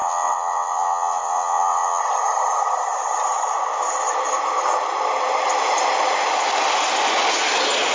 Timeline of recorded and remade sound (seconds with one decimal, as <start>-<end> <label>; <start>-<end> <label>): 0.0-2.0 remade; 2.0-7.9 recorded